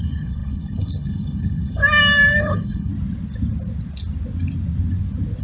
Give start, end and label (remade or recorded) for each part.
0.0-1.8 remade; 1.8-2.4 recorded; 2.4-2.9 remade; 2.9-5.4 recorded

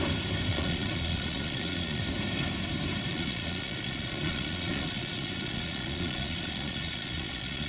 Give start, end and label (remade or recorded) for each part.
0.0-0.5 recorded; 0.5-2.0 remade; 2.0-3.1 recorded; 3.1-7.7 remade

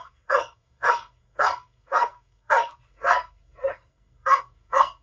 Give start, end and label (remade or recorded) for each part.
0.0-5.0 remade

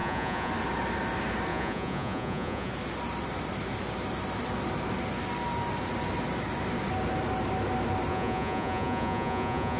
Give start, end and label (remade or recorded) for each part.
0.0-0.5 remade; 0.5-1.5 recorded; 1.5-2.7 remade; 2.7-8.1 recorded; 8.1-9.8 remade

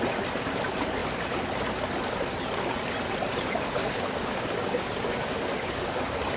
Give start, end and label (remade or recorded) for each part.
0.0-3.8 recorded; 3.8-6.4 remade